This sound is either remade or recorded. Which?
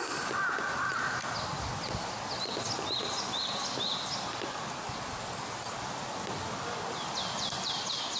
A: recorded